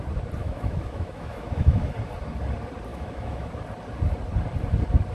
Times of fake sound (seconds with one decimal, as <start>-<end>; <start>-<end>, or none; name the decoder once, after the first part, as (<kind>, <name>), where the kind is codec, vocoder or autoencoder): 0.4-1.9 (autoencoder, DAC-VAE); 2.9-3.5

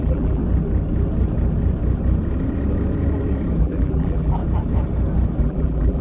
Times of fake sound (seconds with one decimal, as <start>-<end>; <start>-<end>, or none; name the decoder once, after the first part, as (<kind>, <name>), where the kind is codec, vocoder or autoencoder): 0.0-0.4 (vocoder, BigVGAN v2); 3.6-4.4; 5.4-6.0

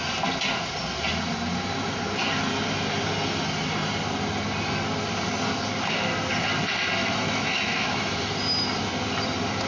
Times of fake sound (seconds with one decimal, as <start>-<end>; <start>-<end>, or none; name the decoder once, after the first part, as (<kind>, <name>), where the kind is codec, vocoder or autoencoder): 7.0-8.3 (autoencoder, DAC-VAE)